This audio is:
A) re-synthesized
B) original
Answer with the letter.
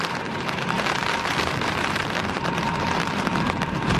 A